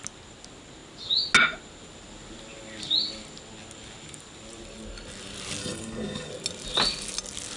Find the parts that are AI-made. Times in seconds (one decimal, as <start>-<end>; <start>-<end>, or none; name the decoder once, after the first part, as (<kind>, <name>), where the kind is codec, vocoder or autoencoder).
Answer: 5.6-6.3 (codec, HILCodec)